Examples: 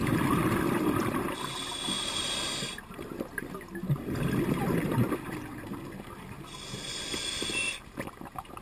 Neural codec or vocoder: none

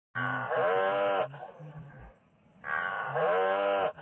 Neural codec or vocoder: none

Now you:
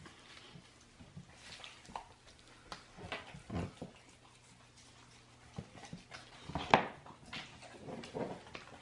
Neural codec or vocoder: none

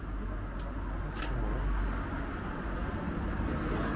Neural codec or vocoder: none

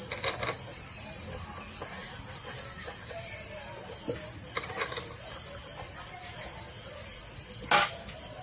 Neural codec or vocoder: none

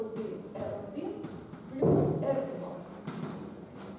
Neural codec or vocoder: none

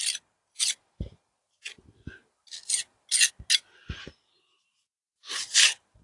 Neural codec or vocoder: none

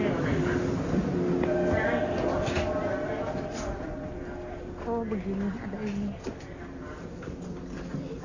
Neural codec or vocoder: none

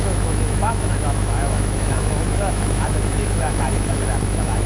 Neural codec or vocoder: autoencoder, DAC-VAE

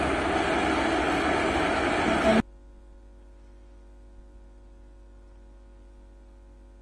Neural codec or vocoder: none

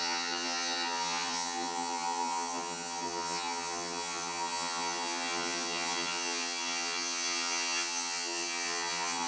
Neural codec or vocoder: vocoder, HiFi-GAN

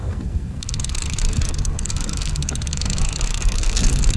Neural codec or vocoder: codec, SNAC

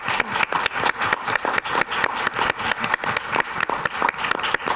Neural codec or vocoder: none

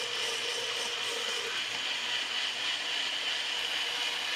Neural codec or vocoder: none